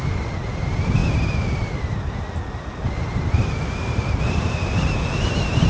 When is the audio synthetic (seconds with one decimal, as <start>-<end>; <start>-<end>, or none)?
none